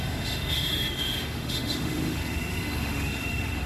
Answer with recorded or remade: remade